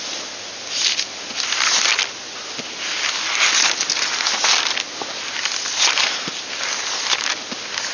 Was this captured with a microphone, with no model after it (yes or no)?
yes